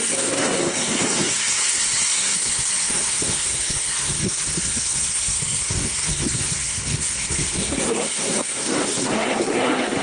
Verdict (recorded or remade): remade